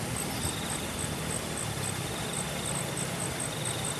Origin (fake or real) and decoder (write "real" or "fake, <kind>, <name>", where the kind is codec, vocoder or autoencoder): real